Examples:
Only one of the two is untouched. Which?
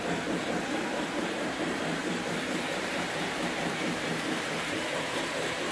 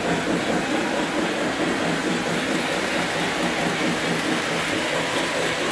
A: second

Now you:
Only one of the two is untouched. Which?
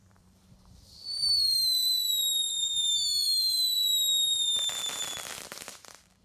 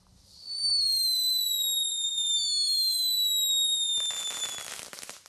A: second